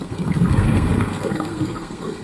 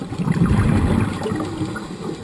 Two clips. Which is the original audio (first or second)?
second